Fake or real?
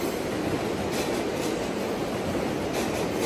real